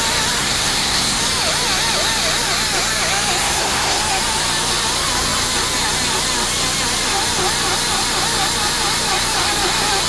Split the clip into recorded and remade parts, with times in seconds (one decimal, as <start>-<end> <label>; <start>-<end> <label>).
0.0-0.4 recorded; 0.4-1.2 remade; 1.2-3.4 recorded; 3.4-4.0 remade; 4.0-10.1 recorded